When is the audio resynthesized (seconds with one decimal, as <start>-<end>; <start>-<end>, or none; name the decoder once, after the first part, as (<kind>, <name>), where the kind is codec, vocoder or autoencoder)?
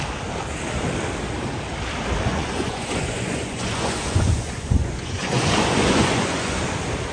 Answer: 2.3-6.6 (vocoder, Vocos)